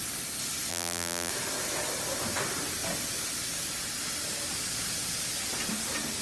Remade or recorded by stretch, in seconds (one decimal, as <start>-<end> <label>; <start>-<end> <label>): 0.0-0.7 recorded; 0.7-1.3 remade; 1.3-6.2 recorded